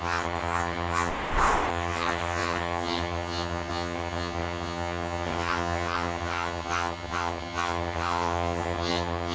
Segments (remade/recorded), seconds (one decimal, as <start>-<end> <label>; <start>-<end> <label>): 0.0-1.1 remade; 1.1-1.7 recorded; 1.7-9.3 remade